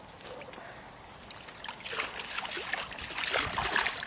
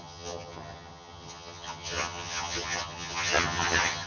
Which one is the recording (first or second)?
first